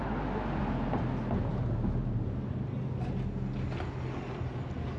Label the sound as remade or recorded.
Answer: recorded